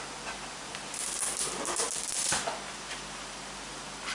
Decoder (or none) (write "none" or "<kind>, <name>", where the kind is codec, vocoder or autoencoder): none